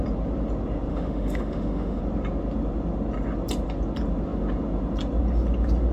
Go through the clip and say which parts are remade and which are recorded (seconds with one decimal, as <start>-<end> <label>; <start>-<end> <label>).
0.0-0.9 recorded; 0.9-2.0 remade; 2.0-5.9 recorded